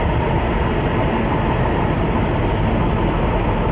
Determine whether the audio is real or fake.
real